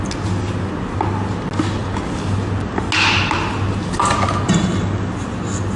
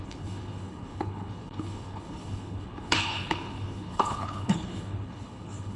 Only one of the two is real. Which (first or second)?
first